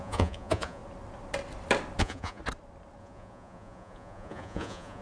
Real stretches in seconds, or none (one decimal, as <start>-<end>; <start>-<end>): 0.8-2.0; 2.4-3.0